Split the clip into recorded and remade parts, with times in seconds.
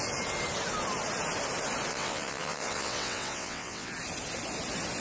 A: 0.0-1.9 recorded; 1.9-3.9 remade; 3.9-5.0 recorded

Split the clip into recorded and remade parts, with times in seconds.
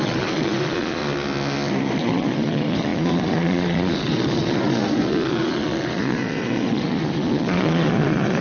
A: 0.0-1.0 remade; 1.0-2.0 recorded; 2.0-8.4 remade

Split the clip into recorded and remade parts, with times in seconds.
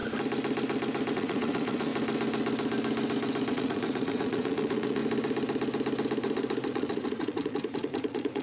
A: 0.0-1.1 recorded; 1.1-1.9 remade; 1.9-3.5 recorded; 3.5-5.0 remade; 5.0-6.7 recorded; 6.7-8.4 remade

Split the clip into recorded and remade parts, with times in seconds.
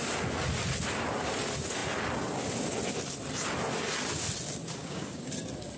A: 0.0-4.8 recorded; 4.8-5.3 remade; 5.3-5.8 recorded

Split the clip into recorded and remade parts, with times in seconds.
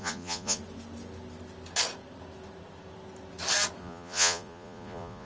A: 0.0-0.6 remade; 0.6-3.8 recorded; 3.8-5.3 remade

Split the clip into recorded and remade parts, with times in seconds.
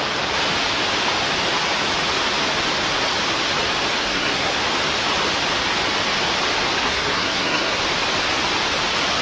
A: 0.0-4.0 recorded; 4.0-4.5 remade; 4.5-6.8 recorded; 6.8-7.8 remade; 7.8-9.2 recorded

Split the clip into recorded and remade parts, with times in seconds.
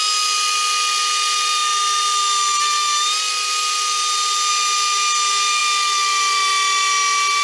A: 0.0-7.4 recorded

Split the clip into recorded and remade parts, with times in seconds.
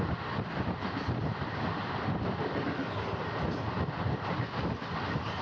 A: 0.0-5.4 recorded